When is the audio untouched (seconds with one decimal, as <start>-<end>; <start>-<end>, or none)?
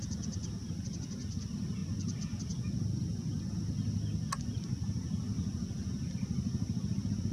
0.0-7.3